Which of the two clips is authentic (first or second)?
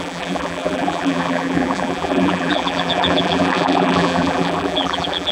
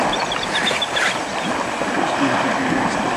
second